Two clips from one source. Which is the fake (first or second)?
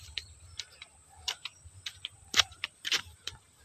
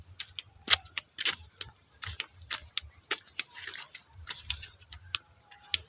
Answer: first